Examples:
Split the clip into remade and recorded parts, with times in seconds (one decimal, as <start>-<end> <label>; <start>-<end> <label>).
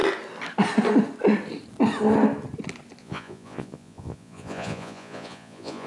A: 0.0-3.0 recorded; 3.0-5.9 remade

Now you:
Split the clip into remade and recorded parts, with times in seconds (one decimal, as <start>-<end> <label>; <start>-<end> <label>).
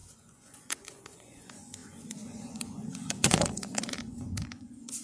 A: 0.0-5.0 remade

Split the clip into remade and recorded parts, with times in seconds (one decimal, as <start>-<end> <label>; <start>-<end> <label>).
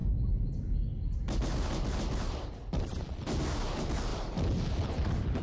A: 0.0-5.4 recorded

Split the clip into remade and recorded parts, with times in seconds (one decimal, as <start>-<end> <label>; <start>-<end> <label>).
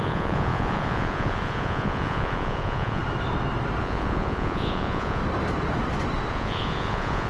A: 0.0-3.0 remade; 3.0-3.8 recorded; 3.8-5.2 remade; 5.2-6.3 recorded; 6.3-7.3 remade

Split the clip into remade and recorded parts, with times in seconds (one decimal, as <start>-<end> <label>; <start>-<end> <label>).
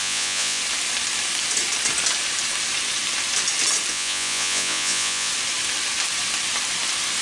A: 0.0-0.6 remade; 0.6-3.9 recorded; 3.9-5.3 remade; 5.3-7.2 recorded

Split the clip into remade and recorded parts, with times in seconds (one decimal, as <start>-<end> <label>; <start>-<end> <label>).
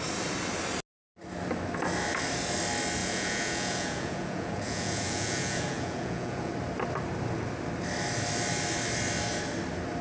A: 0.0-3.0 recorded; 3.0-6.5 remade; 6.5-10.0 recorded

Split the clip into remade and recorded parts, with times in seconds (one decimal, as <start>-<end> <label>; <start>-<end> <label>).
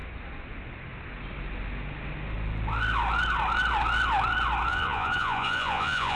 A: 0.0-4.7 recorded; 4.7-6.2 remade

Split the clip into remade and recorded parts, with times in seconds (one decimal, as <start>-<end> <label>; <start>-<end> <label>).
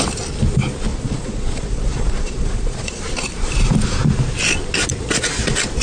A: 0.0-0.9 recorded; 0.9-3.0 remade; 3.0-5.8 recorded